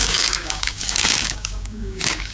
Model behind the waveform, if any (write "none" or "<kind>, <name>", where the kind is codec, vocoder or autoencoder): codec, DAC